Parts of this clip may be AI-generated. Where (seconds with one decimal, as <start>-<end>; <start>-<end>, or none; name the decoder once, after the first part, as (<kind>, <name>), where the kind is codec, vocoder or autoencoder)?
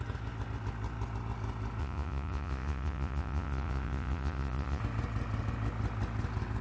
1.8-4.8 (vocoder, Vocos)